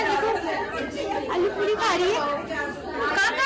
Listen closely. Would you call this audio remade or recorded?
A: recorded